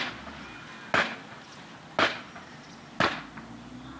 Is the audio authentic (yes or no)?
yes